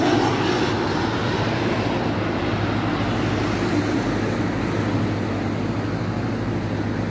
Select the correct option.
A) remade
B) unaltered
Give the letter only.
B